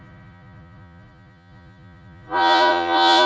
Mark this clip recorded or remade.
remade